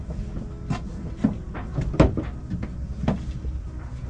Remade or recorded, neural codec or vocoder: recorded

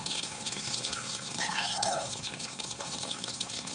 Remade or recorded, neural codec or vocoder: remade, codec, SNAC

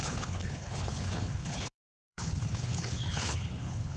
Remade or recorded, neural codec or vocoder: remade, codec, HILCodec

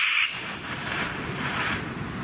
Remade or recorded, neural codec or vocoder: remade, vocoder, BigVGAN v2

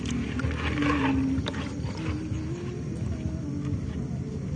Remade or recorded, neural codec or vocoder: recorded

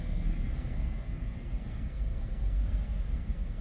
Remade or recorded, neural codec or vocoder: remade, codec, SNAC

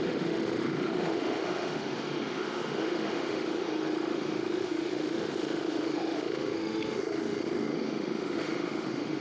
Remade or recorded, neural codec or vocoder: remade, autoencoder, DAC-VAE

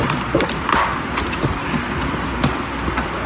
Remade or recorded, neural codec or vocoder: recorded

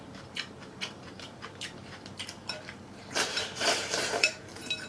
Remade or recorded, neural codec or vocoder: remade, vocoder, BigVGAN v2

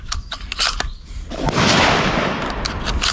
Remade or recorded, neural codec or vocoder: recorded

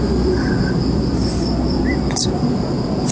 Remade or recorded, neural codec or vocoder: remade, vocoder, BigVGAN v2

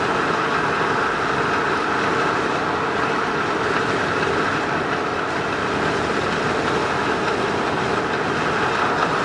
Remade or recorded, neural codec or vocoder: recorded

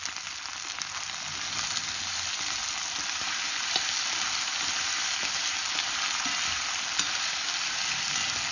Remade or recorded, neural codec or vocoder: recorded